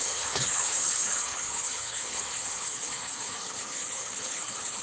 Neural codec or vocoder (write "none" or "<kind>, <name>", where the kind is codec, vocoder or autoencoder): codec, HILCodec